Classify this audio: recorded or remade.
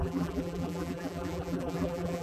remade